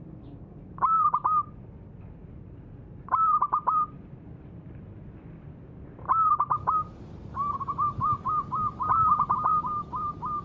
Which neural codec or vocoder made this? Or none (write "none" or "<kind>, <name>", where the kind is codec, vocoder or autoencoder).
vocoder, BigVGAN v2